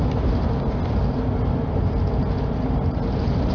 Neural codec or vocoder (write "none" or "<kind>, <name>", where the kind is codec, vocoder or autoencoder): none